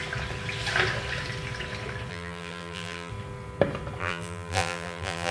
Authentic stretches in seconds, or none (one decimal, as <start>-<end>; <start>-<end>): 0.0-2.1; 3.1-4.0